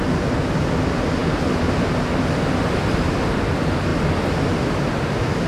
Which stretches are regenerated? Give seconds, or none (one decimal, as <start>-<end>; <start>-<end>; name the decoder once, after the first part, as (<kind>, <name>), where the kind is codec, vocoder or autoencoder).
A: 3.9-4.6 (vocoder, BigVGAN v2)